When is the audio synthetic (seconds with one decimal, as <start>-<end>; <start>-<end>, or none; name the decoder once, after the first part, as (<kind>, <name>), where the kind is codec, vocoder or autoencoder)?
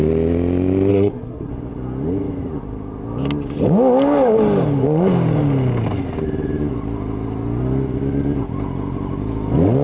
0.9-1.5 (codec, SNAC)